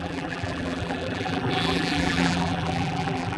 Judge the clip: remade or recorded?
remade